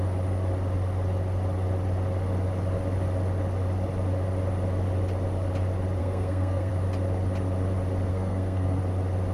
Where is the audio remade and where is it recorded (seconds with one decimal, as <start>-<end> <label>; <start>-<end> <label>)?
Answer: 0.0-6.0 recorded; 6.0-6.7 remade; 6.7-8.1 recorded; 8.1-8.8 remade; 8.8-9.3 recorded